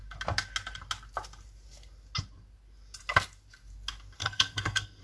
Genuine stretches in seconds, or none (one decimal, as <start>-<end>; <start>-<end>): 0.0-4.2